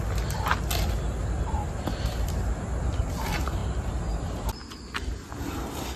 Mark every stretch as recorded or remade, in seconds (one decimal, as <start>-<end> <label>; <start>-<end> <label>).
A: 0.0-6.0 recorded